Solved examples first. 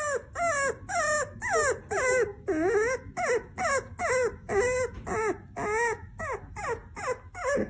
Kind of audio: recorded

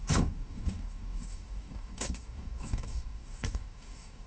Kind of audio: remade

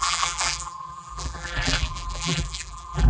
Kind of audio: remade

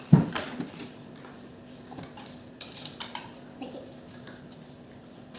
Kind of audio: recorded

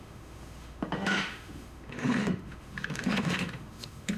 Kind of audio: remade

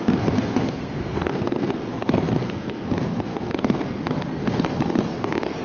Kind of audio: remade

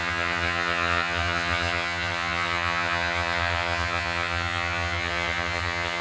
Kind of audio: remade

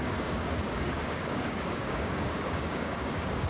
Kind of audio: remade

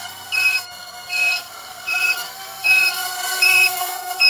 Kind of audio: remade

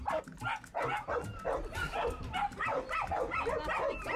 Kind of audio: recorded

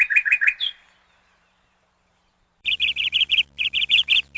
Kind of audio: remade